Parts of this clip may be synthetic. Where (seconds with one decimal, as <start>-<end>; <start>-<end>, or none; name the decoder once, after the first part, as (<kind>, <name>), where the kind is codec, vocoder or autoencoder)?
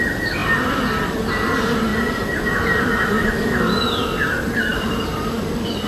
none